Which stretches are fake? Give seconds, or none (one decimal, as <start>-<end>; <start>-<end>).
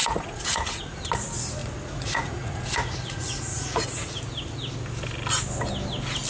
0.0-0.8; 1.6-4.2